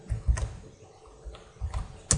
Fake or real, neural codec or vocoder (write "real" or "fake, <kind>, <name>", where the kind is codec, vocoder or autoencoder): real